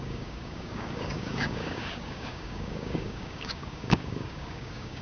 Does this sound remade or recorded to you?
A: remade